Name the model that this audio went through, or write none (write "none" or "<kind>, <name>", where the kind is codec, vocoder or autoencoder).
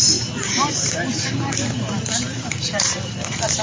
vocoder, BigVGAN v2